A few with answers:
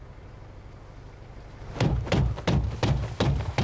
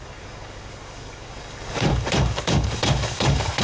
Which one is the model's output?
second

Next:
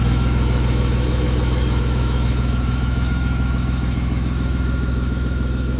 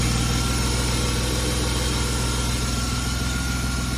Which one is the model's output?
first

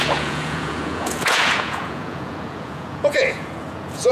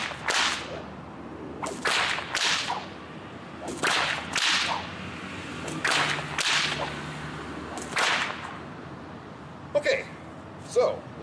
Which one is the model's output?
first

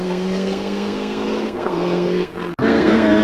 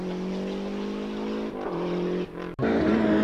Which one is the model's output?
first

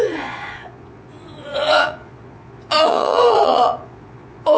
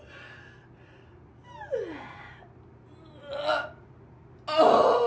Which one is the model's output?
first